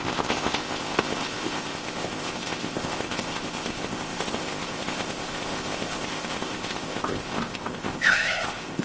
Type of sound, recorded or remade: remade